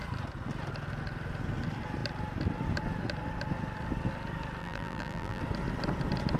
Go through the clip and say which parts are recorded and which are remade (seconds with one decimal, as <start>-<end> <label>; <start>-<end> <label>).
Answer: 0.0-4.6 recorded; 4.6-5.4 remade; 5.4-6.4 recorded